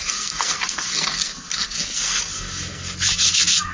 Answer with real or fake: fake